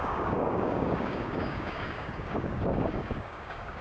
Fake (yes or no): yes